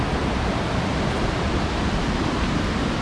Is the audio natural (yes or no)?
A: yes